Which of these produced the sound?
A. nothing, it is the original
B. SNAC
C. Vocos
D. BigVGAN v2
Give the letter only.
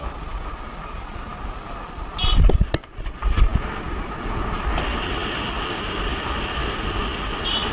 A